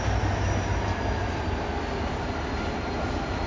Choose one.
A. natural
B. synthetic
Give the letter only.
A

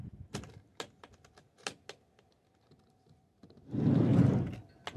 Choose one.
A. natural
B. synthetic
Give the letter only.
A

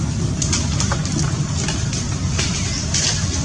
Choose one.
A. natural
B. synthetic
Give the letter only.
A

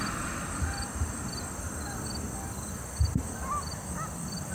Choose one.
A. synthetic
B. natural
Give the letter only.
B